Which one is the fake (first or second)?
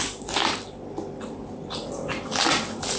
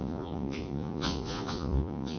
second